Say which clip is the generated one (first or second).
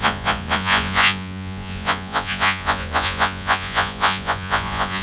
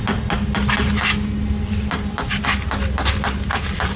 first